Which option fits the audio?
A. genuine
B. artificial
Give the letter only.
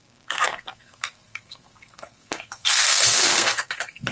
B